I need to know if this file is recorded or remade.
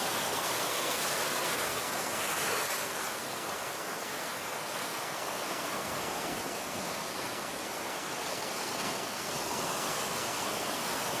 remade